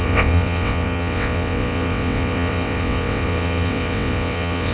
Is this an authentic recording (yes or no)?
no